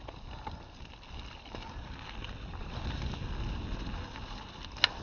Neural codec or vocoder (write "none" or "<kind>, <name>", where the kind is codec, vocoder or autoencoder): none